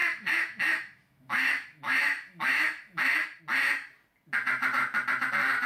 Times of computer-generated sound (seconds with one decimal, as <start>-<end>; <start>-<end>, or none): 0.0-3.4